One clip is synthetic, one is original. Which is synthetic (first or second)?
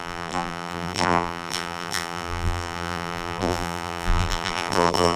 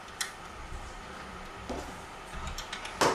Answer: first